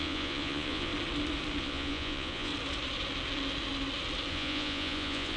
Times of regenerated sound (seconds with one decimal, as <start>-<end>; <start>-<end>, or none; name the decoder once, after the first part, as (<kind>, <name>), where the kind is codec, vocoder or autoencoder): 0.0-0.9 (vocoder, Vocos); 1.6-2.5; 4.3-5.4